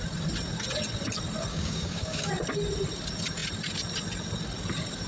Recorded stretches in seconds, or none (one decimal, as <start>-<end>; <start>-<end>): 0.0-1.5; 2.3-5.1